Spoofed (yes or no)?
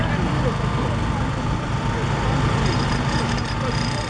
no